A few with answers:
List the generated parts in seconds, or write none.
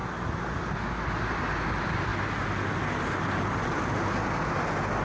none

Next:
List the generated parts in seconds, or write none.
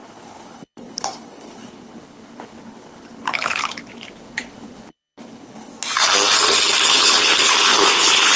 0.0-5.7 (codec, HILCodec); 6.9-8.4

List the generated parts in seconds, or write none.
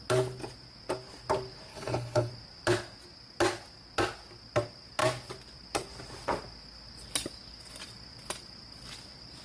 1.7-2.3 (codec, HILCodec)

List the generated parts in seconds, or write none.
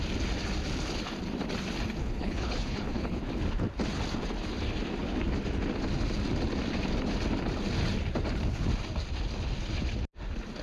2.0-3.2 (codec, HILCodec)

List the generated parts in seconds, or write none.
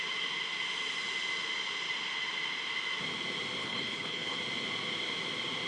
3.6-4.4 (codec, HILCodec)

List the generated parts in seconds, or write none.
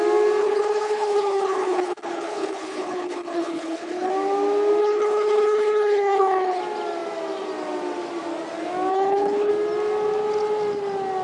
0.4-4.1 (codec, HILCodec); 4.8-6.6; 8.9-9.5